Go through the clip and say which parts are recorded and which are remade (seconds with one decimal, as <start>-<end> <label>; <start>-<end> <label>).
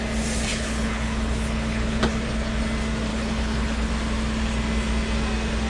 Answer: 0.0-0.5 recorded; 0.5-2.0 remade; 2.0-3.1 recorded; 3.1-3.9 remade; 3.9-5.7 recorded